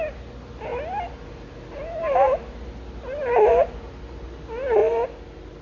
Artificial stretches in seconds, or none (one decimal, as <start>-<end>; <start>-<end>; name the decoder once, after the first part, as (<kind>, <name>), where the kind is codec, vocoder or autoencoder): none